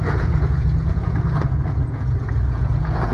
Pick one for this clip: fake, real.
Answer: fake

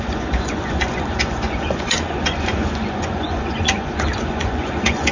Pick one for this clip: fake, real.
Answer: fake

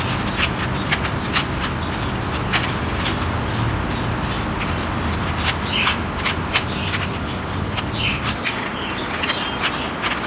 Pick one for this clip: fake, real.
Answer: real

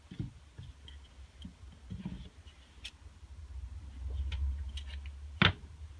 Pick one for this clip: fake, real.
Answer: real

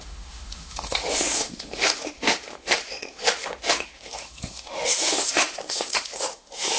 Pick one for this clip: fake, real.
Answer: fake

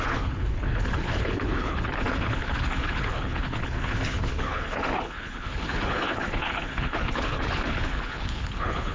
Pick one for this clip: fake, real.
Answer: fake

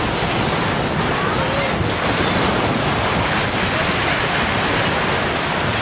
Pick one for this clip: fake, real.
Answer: real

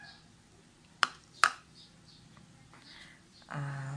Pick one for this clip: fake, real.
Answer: real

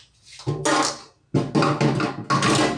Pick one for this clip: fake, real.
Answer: real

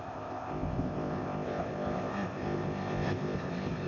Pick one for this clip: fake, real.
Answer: fake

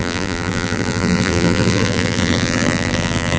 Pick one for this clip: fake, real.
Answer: fake